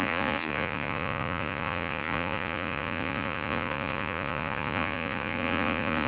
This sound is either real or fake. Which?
fake